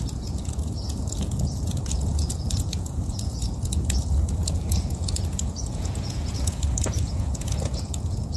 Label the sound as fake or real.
fake